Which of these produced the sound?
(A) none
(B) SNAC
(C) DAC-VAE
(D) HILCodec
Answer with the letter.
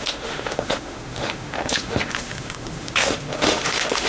C